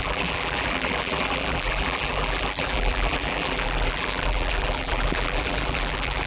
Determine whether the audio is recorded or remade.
remade